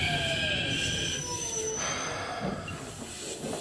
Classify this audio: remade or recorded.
recorded